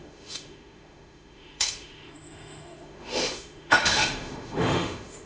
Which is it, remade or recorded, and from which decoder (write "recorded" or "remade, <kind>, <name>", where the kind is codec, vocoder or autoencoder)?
remade, autoencoder, DAC-VAE